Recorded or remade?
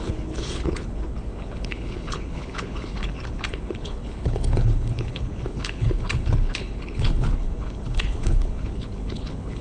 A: remade